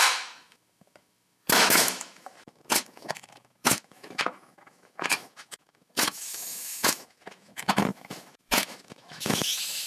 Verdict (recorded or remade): remade